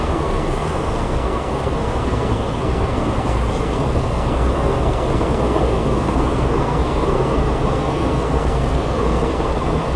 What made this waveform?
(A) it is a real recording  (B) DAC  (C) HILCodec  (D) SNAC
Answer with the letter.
D